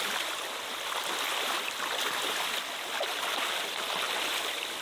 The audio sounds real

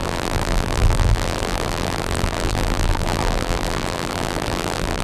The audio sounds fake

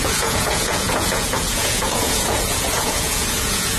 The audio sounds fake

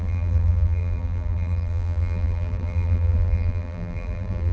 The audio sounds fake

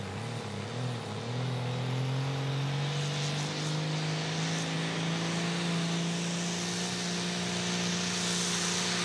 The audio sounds real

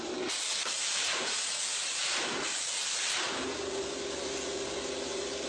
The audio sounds real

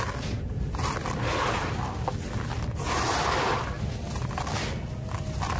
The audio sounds real